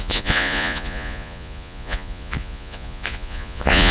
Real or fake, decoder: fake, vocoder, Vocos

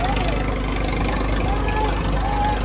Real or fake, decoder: real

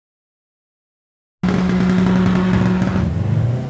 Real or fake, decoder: real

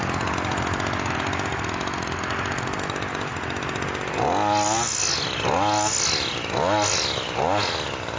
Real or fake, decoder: real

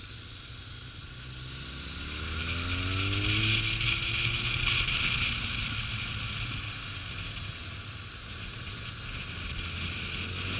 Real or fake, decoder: real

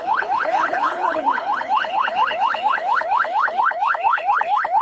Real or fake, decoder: fake, codec, HILCodec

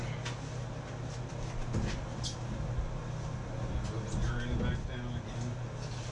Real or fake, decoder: real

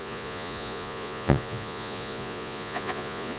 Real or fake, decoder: fake, vocoder, Vocos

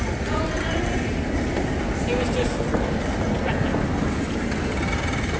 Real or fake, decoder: real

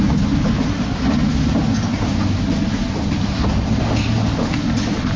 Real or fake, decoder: real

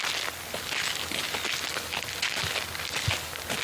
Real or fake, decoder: real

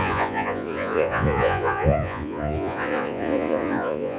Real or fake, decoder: fake, vocoder, Vocos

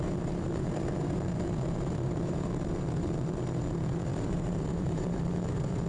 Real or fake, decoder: fake, vocoder, BigVGAN v2